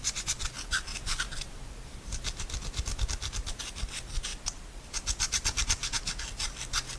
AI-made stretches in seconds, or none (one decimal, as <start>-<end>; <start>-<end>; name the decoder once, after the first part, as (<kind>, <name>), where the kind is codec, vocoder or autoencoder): none

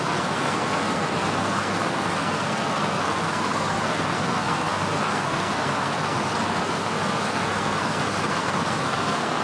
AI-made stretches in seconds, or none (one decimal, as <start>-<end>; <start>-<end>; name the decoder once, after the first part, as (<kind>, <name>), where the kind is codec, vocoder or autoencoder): 0.0-9.4 (codec, SNAC)

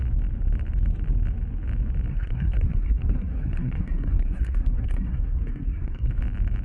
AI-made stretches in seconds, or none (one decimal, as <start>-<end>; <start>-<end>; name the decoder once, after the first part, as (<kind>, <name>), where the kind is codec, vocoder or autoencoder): 2.1-6.1 (codec, SNAC)

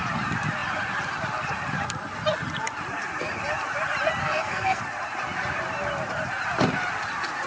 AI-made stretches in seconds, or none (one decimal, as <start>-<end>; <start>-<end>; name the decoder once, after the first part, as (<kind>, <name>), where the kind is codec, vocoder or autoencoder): 4.2-4.8 (codec, SNAC)

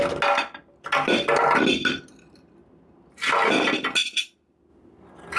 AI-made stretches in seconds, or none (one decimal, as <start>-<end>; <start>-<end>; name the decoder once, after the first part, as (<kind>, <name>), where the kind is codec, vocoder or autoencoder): none

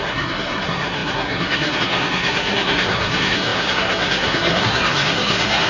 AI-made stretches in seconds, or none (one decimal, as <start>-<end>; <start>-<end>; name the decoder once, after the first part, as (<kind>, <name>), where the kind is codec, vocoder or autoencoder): 0.0-5.7 (codec, SNAC)